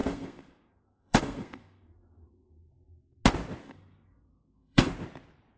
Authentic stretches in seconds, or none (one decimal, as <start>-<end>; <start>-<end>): 2.7-3.6; 4.9-5.6